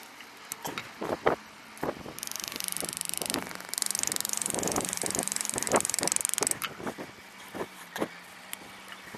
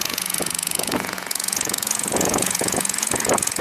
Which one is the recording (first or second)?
first